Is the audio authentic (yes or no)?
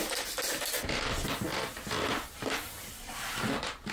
yes